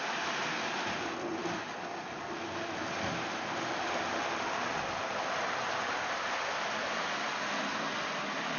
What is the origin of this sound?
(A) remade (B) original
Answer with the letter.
B